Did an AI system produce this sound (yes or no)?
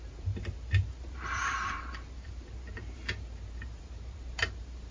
yes